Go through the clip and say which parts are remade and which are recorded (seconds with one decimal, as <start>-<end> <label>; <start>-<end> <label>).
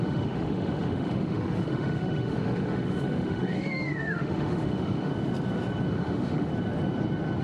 0.0-5.1 remade; 5.1-5.9 recorded; 5.9-6.5 remade; 6.5-7.4 recorded